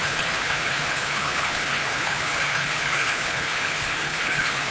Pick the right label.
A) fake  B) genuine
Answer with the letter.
A